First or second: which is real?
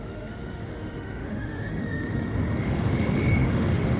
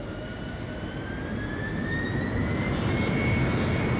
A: second